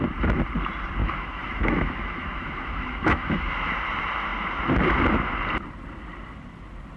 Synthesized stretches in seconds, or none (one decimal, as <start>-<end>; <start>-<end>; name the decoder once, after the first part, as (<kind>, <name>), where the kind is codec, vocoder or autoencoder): 1.0-3.7 (autoencoder, DAC-VAE)